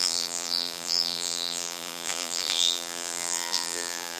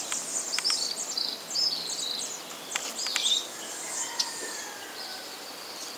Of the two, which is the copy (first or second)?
first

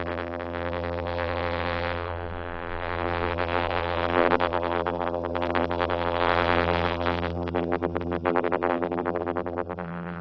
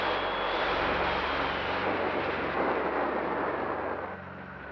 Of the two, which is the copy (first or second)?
first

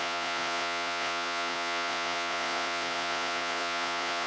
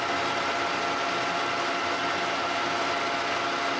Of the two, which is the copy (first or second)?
first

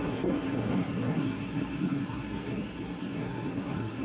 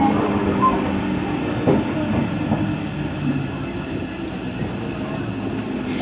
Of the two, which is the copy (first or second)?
first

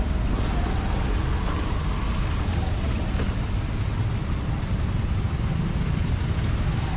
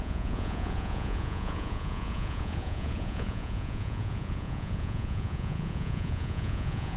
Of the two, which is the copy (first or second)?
second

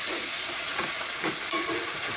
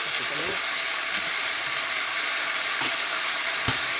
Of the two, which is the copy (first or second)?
first